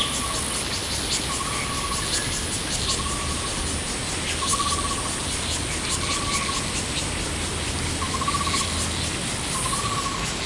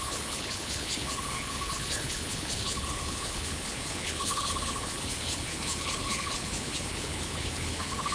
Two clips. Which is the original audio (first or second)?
first